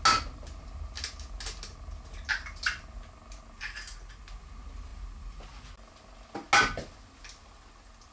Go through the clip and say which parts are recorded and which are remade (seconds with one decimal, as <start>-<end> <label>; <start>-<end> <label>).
0.0-8.1 recorded